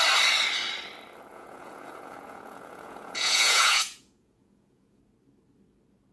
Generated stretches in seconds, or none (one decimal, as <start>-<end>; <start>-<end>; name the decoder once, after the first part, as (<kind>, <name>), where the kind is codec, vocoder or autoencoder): 1.3-5.0 (vocoder, Vocos)